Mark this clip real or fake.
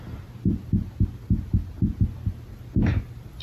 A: real